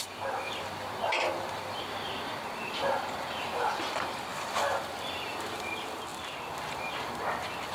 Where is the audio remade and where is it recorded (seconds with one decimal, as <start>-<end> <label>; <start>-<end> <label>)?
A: 0.0-7.7 remade